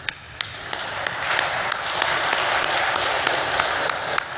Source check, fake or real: real